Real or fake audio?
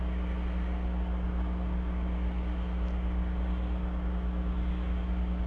real